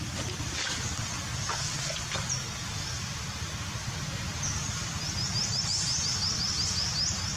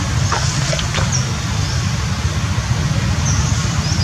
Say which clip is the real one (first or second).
second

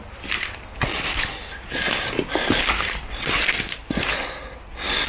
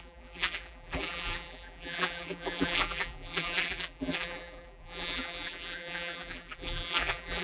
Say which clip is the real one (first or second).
first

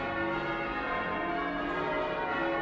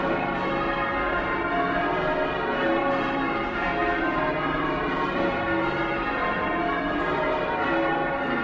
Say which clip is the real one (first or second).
first